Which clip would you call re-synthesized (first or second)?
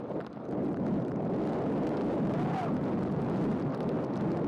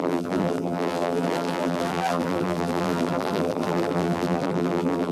second